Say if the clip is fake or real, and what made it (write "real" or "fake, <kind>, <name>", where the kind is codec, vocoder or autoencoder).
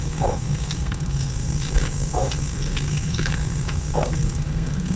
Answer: fake, codec, SNAC